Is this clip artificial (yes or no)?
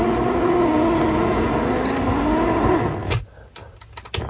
no